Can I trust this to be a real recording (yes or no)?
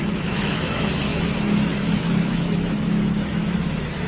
no